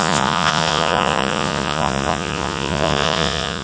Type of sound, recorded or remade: remade